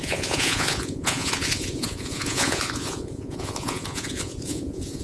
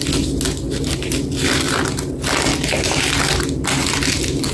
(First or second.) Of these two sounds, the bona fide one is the second